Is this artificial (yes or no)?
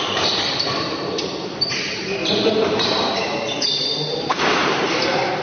yes